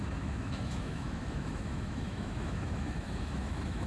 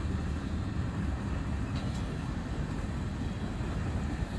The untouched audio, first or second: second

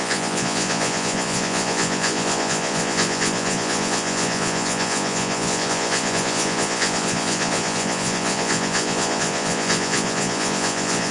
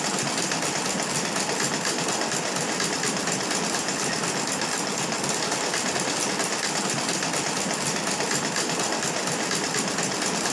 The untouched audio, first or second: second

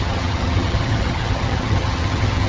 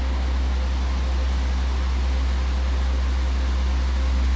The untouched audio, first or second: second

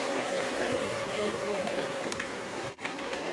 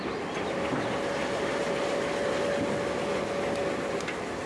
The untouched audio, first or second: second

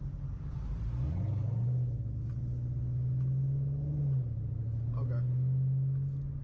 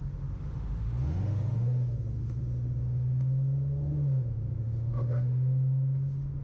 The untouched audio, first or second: first